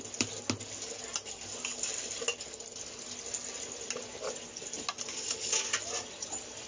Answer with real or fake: real